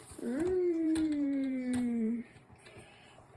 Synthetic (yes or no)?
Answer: yes